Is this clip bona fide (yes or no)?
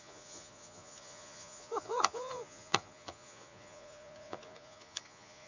no